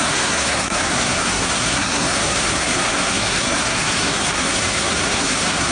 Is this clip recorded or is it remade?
remade